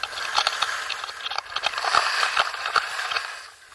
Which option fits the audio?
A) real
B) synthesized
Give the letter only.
A